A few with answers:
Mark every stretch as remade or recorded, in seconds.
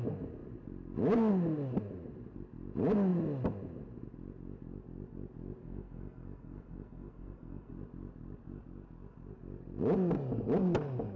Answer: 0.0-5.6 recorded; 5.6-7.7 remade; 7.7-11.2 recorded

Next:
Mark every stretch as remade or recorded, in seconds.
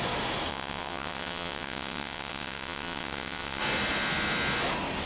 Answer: 0.0-0.5 recorded; 0.5-3.6 remade; 3.6-5.1 recorded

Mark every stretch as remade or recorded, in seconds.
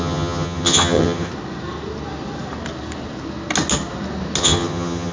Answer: 0.0-1.3 remade; 1.3-4.4 recorded; 4.4-5.1 remade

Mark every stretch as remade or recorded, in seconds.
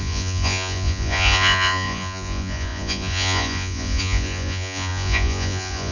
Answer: 0.0-5.9 remade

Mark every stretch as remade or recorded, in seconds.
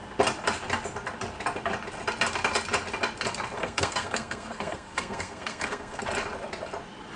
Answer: 0.0-3.6 recorded; 3.6-6.0 remade; 6.0-7.2 recorded